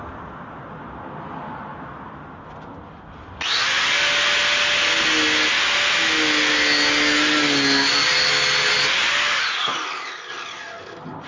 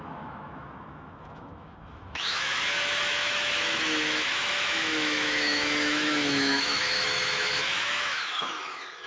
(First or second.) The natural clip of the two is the first